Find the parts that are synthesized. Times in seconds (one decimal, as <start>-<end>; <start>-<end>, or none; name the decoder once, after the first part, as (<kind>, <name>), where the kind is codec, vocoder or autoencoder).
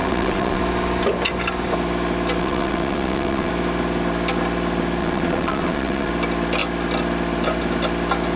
0.0-0.6 (vocoder, WaveNeXt); 2.4-3.5; 5.0-6.1